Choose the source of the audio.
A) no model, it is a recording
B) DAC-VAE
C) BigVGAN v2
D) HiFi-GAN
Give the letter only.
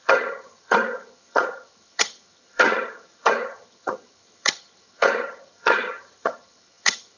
D